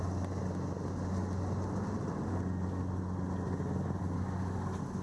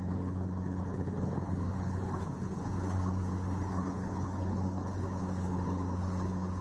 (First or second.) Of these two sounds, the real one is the first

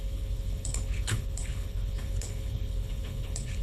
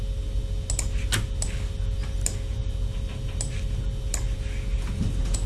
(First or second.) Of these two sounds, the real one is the second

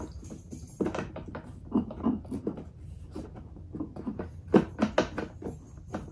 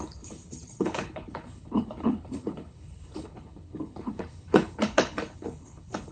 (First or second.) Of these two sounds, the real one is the first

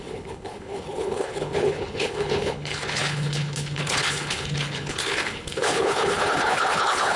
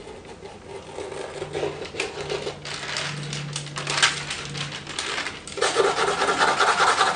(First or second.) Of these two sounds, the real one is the second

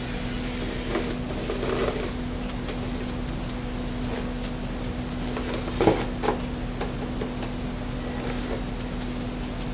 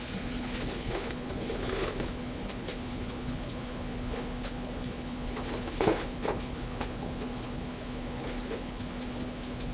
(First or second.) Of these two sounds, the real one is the first